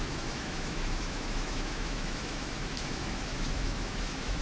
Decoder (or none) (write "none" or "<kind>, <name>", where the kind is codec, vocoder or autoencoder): autoencoder, DAC-VAE